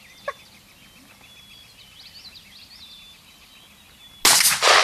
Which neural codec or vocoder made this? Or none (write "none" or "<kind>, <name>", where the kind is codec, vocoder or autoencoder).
none